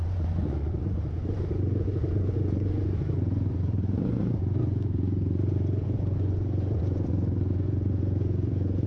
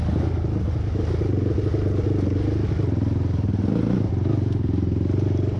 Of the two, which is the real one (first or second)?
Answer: second